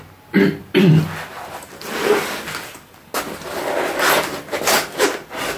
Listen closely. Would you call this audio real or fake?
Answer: real